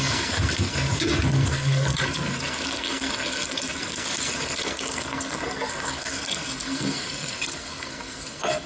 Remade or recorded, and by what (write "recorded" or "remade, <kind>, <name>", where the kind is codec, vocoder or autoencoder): remade, codec, SNAC